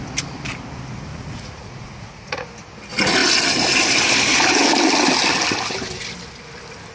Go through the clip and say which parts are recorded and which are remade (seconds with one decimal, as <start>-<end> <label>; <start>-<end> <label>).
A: 0.0-1.1 recorded; 1.1-2.5 remade; 2.5-6.9 recorded